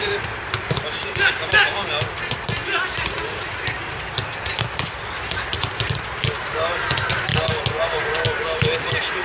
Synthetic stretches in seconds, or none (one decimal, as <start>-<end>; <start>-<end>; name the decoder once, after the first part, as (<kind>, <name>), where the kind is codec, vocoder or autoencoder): none